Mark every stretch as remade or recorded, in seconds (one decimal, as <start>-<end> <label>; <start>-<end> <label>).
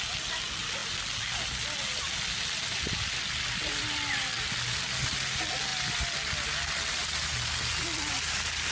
0.0-8.7 recorded